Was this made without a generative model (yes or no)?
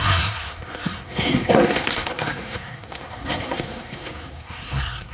no